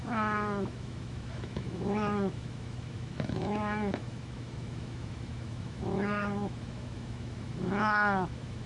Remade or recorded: remade